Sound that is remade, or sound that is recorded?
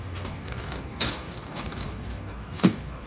remade